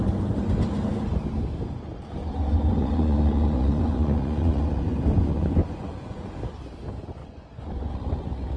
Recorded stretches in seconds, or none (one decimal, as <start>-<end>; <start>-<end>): 0.0-2.2; 6.4-7.2; 7.9-8.6